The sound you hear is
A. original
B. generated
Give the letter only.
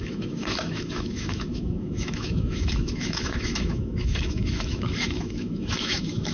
B